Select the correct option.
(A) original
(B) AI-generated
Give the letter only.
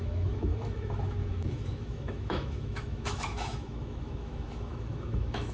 B